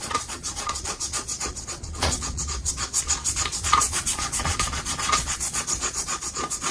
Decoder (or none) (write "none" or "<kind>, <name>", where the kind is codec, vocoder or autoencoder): vocoder, Vocos